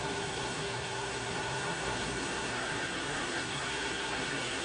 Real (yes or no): no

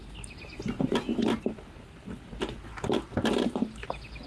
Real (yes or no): yes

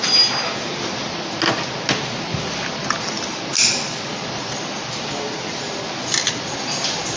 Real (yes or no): yes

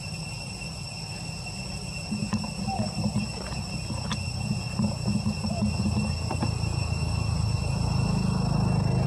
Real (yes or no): yes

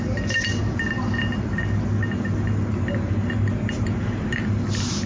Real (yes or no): yes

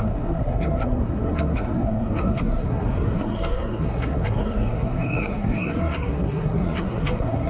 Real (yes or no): no